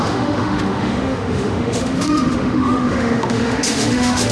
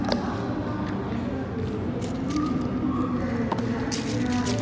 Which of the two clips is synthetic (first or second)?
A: first